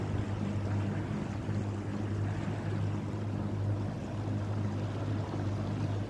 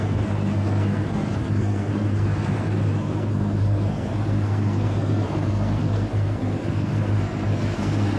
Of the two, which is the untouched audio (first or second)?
first